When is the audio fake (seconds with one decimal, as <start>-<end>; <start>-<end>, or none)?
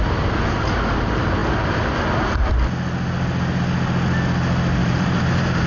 4.8-5.7